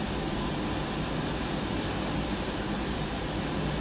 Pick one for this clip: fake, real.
real